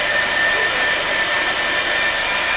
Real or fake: fake